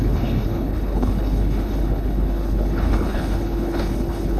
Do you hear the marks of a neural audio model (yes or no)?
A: yes